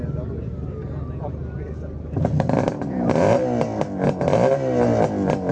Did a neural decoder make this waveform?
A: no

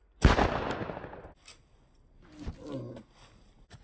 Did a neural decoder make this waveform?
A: no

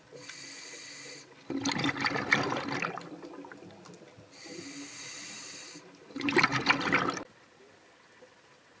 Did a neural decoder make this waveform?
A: no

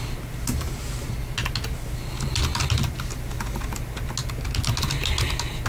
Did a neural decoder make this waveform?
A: no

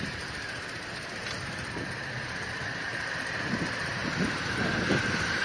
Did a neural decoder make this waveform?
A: yes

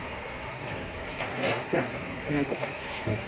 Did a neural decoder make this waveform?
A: yes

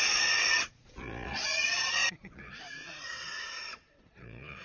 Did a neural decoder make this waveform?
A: yes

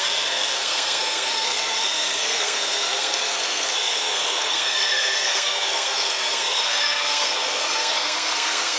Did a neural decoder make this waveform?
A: yes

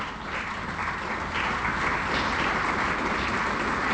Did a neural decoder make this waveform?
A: no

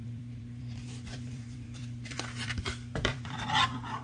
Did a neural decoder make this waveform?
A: yes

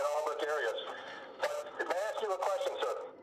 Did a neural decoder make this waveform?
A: no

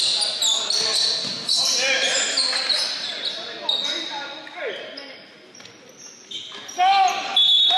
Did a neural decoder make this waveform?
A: no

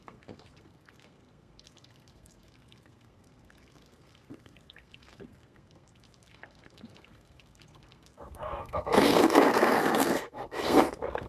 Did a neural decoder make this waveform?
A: yes